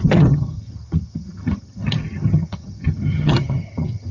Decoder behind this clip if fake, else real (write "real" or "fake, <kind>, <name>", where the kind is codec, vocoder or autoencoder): fake, vocoder, HiFi-GAN